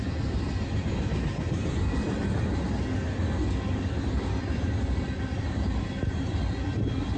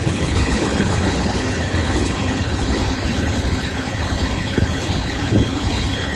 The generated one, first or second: second